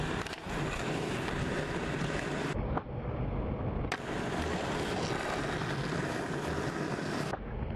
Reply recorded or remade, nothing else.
recorded